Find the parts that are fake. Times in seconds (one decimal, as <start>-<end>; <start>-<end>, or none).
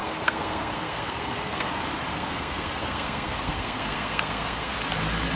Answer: 0.0-1.7; 2.1-4.7